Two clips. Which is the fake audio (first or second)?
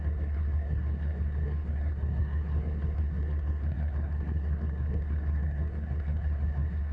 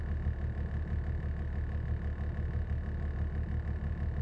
first